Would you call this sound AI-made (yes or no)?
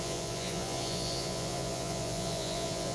yes